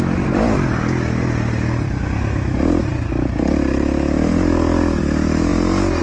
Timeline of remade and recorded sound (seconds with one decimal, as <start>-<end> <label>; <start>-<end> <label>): 0.0-6.0 recorded